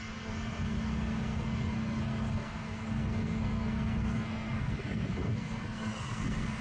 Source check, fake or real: fake